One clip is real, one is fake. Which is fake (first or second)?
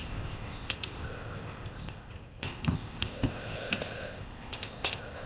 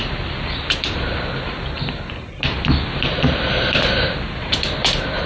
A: first